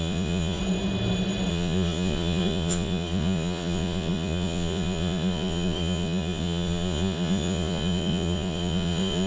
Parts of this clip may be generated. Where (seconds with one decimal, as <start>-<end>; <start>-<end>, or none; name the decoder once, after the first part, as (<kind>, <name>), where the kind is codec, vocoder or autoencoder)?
0.0-0.6 (vocoder, Vocos); 1.5-9.3